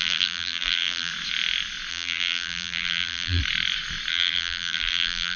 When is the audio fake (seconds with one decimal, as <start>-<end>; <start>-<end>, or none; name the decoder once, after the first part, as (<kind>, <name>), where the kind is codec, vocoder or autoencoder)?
0.0-1.1 (vocoder, BigVGAN v2); 1.9-3.4; 4.1-5.4